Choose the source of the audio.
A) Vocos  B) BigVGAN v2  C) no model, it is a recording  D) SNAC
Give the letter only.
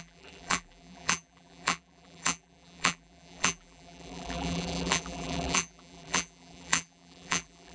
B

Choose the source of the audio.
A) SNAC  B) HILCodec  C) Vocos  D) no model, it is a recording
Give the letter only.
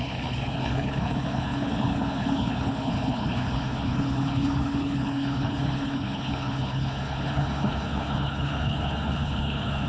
B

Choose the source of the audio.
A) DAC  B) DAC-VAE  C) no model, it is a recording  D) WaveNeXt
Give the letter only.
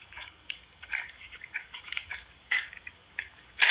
A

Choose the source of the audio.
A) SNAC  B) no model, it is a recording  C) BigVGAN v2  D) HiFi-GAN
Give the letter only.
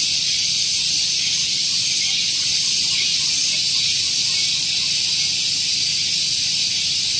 B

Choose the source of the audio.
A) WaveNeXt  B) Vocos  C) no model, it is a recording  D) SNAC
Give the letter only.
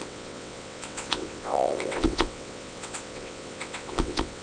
A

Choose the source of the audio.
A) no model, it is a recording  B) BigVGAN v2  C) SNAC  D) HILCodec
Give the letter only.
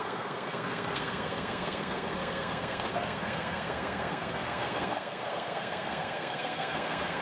C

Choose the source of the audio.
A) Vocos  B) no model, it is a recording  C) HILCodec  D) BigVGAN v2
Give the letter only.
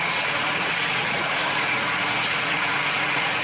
A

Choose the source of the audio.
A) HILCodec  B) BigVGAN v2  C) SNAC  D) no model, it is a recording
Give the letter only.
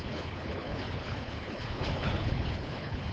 A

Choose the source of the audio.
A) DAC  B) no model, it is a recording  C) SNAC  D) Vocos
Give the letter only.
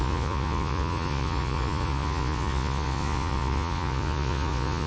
D